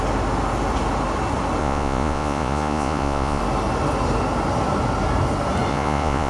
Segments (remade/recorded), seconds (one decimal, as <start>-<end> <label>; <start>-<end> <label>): 0.0-1.6 recorded; 1.6-3.4 remade; 3.4-5.7 recorded; 5.7-6.3 remade